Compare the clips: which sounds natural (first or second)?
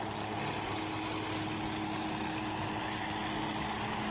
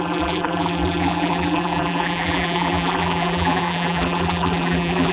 first